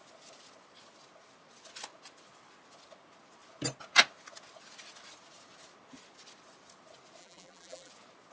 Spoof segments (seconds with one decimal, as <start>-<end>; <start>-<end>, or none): 7.2-7.9